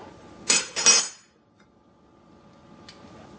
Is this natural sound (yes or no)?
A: yes